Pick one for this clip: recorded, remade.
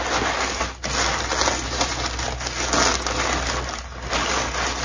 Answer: recorded